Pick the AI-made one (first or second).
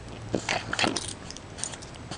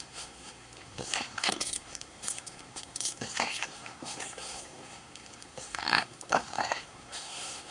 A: second